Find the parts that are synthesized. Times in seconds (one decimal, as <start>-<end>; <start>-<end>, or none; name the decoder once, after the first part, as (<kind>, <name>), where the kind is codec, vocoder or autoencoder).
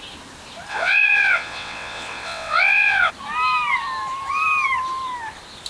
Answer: 0.7-3.1 (vocoder, WaveNeXt)